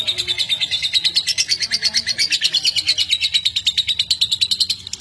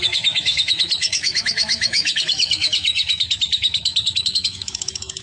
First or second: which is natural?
first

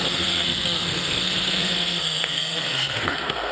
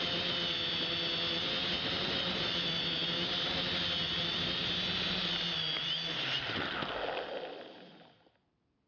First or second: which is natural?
second